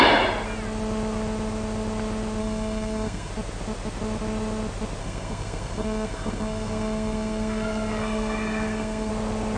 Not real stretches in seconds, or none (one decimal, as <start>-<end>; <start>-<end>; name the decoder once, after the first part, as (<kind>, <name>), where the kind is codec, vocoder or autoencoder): 2.4-3.3 (codec, SNAC); 5.0-9.1